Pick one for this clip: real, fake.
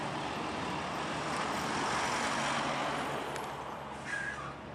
real